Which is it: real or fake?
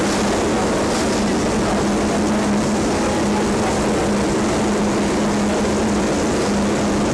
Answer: real